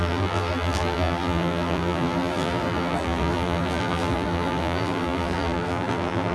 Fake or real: fake